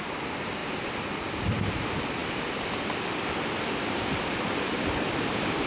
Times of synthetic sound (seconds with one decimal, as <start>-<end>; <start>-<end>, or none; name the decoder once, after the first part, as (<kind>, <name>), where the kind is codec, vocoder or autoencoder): 0.0-0.6 (vocoder, BigVGAN v2); 1.8-5.7